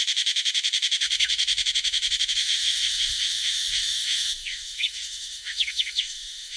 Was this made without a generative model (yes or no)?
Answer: no